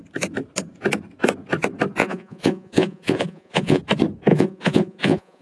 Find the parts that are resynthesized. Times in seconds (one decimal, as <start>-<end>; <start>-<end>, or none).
2.0-3.8; 4.3-5.4